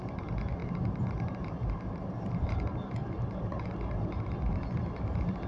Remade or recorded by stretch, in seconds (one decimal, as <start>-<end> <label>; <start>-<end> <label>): 0.0-3.0 recorded; 3.0-4.3 remade; 4.3-5.5 recorded